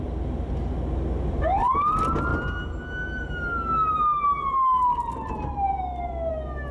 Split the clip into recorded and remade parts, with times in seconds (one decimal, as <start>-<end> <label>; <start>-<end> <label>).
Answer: 0.0-6.7 recorded